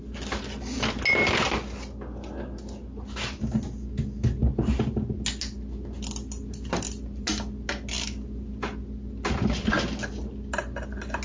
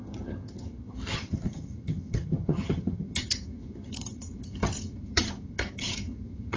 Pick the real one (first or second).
first